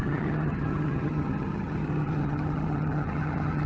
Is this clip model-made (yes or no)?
yes